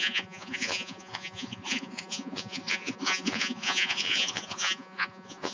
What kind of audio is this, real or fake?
fake